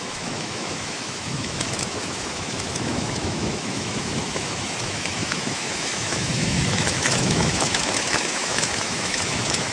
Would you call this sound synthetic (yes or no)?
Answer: yes